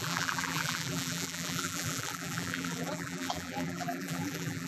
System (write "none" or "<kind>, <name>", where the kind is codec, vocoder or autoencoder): vocoder, BigVGAN v2